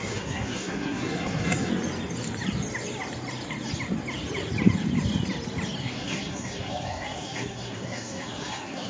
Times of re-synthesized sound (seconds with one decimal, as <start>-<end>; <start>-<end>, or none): 0.0-1.7; 5.8-8.9

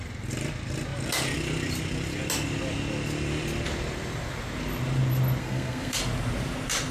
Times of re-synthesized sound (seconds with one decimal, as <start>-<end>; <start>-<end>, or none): 5.4-6.0

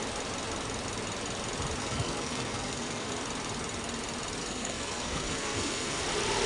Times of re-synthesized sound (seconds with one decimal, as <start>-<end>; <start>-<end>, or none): 1.8-3.1; 4.4-6.0